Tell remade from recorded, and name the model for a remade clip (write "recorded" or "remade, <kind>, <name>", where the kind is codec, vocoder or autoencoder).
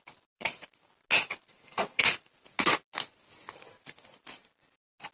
recorded